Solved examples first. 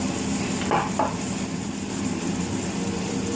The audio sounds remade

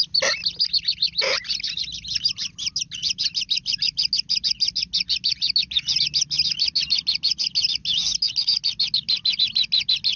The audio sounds recorded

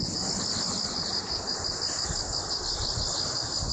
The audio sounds recorded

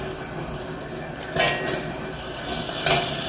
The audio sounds recorded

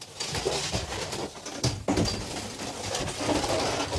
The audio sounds recorded